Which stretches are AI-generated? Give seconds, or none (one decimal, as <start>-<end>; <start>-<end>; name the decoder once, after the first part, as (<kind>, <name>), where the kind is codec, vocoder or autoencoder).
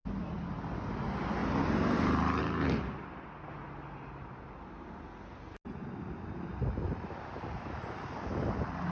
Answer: none